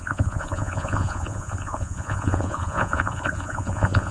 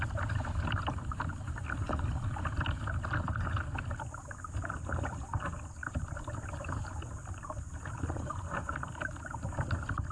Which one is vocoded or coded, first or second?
first